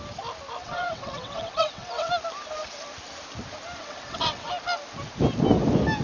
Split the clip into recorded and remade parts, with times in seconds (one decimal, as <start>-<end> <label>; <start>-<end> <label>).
0.0-0.6 recorded; 0.6-2.1 remade; 2.1-3.8 recorded; 3.8-4.5 remade; 4.5-6.0 recorded